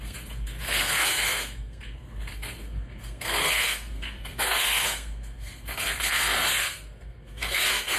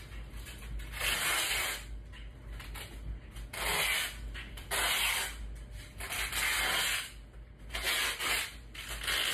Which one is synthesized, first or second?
first